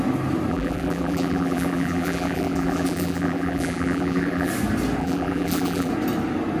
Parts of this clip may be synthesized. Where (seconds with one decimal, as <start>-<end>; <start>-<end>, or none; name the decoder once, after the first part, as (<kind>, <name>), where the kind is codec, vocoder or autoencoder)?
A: 0.5-4.5 (vocoder, BigVGAN v2); 5.0-5.9